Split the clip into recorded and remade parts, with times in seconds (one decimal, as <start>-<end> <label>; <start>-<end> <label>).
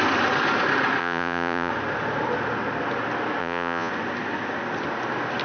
0.0-1.0 recorded; 1.0-1.7 remade; 1.7-3.4 recorded; 3.4-3.9 remade; 3.9-5.4 recorded